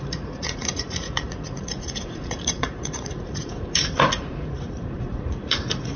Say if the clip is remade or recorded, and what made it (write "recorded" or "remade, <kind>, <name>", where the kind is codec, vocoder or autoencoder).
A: remade, vocoder, Vocos